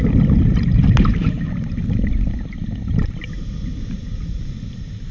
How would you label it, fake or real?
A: real